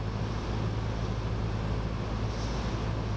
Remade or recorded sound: recorded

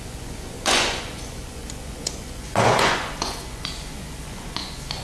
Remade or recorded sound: remade